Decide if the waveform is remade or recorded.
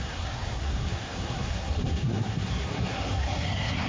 remade